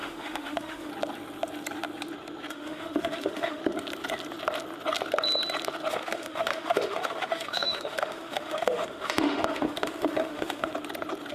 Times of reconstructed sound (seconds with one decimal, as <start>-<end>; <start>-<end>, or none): 0.0-0.9; 2.5-3.6; 5.9-10.7